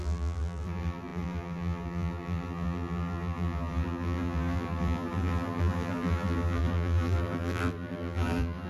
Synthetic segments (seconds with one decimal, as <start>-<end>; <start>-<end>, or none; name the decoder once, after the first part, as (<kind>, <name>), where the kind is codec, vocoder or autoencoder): 0.0-8.7 (vocoder, BigVGAN v2)